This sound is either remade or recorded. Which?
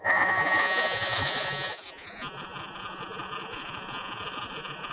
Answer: remade